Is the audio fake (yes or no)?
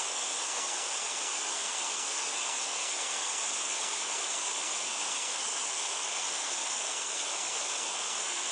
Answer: yes